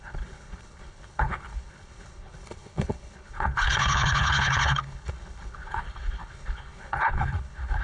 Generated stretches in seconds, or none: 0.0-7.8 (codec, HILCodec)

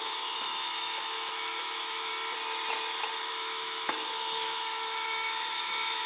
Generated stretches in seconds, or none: 0.0-2.1 (autoencoder, DAC-VAE); 3.3-6.1

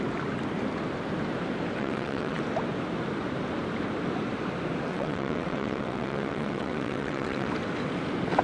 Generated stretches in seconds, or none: 1.8-2.4 (vocoder, WaveNeXt); 4.9-7.5

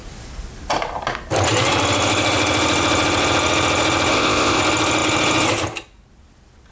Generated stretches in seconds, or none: 4.1-4.6 (codec, ZipCodec)

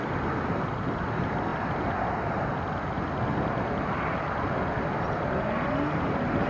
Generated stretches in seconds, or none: none